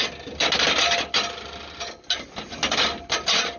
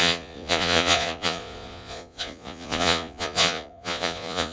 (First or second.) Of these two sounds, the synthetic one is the second